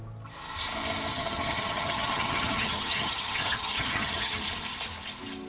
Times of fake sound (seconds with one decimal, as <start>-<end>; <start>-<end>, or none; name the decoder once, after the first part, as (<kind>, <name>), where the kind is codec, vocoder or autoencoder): 1.1-4.4 (vocoder, HiFi-GAN)